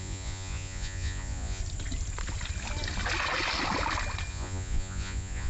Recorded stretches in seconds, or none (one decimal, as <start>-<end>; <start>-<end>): 1.6-4.3